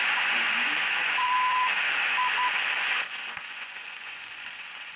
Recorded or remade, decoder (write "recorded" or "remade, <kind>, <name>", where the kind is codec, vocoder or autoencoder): remade, vocoder, Vocos